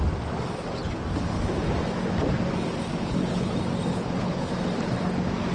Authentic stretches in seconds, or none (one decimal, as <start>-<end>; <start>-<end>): 0.0-3.0; 3.5-3.9; 4.5-5.5

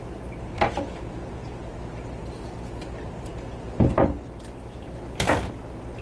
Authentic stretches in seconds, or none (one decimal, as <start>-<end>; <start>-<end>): 0.0-6.0

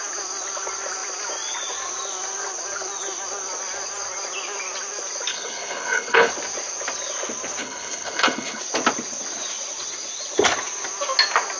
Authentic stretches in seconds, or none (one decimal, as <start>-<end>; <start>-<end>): 0.0-5.3; 6.3-7.6; 8.6-11.6

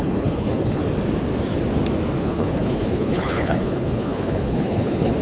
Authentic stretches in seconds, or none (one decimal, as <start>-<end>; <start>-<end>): 0.8-2.2

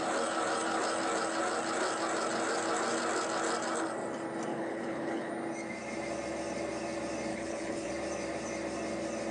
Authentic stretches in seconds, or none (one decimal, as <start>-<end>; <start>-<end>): 0.0-4.5; 5.3-7.3; 7.9-9.3

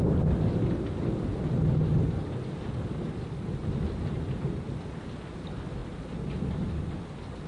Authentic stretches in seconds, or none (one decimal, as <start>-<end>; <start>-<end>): 0.0-7.5